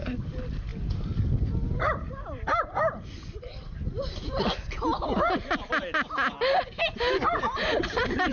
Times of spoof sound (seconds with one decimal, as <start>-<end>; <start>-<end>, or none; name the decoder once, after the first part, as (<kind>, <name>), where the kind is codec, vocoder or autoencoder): 0.0-2.5 (vocoder, BigVGAN v2); 6.7-8.3